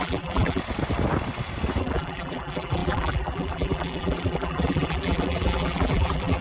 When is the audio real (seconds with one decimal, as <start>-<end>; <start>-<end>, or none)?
0.6-1.8